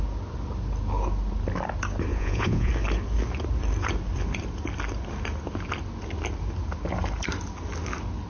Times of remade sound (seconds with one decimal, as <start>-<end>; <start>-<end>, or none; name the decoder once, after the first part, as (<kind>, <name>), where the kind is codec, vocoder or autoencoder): 2.1-2.7 (vocoder, Vocos)